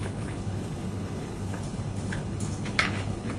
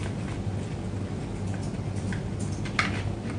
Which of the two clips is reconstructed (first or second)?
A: first